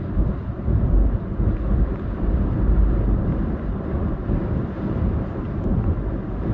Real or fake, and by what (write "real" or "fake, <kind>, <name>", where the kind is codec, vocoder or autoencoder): fake, vocoder, BigVGAN v2